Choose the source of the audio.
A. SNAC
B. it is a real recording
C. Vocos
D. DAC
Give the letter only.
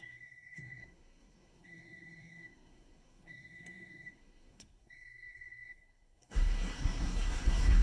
A